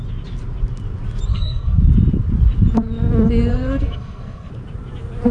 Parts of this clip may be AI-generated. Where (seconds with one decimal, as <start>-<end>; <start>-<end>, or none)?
1.3-1.8; 3.5-4.5